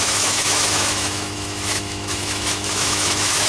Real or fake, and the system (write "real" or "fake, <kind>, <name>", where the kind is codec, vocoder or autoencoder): fake, autoencoder, DAC-VAE